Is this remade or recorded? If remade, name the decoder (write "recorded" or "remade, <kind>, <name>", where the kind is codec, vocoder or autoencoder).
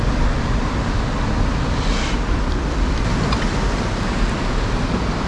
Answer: recorded